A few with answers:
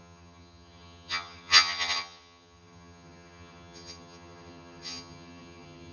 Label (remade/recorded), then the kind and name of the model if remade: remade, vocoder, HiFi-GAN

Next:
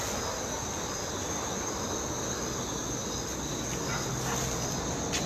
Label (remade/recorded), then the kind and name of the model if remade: recorded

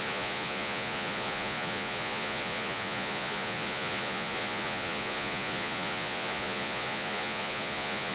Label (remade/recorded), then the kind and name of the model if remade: remade, vocoder, Vocos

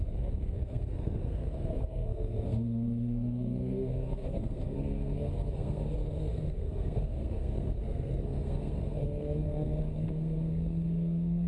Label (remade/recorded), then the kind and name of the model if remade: remade, codec, SNAC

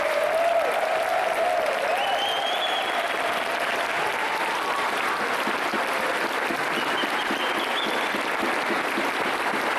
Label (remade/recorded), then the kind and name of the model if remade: recorded